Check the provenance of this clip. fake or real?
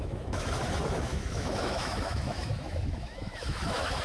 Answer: fake